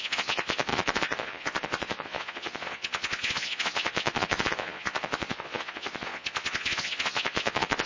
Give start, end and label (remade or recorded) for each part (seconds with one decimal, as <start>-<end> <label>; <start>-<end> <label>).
0.0-7.9 remade